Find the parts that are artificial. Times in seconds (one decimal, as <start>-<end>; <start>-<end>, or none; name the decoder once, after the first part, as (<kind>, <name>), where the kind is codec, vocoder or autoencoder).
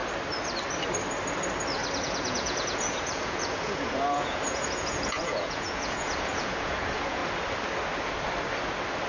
2.0-7.2 (vocoder, Vocos)